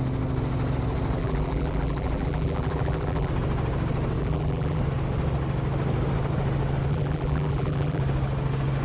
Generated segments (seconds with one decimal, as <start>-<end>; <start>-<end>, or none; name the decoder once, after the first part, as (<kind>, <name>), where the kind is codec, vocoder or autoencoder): 1.2-3.3 (vocoder, BigVGAN v2); 4.2-4.8; 6.9-8.0